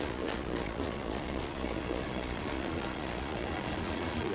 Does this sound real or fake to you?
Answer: fake